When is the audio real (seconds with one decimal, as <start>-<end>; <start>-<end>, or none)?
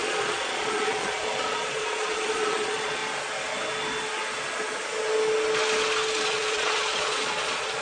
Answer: 3.0-6.2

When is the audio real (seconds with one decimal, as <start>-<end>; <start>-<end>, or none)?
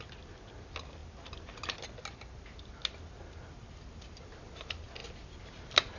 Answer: 0.0-6.0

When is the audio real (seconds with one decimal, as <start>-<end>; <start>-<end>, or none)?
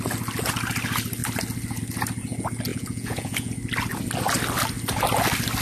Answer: 0.0-2.7; 3.5-5.6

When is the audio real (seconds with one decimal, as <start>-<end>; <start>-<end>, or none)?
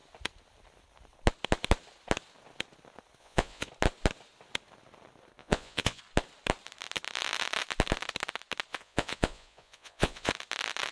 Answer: 0.0-3.2; 3.7-5.4; 6.0-8.7; 10.3-10.9